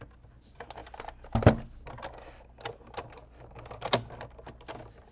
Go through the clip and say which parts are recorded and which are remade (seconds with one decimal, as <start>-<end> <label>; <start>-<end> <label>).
0.0-5.1 recorded